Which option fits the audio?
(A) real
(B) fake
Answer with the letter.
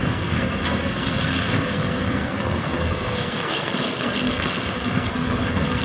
B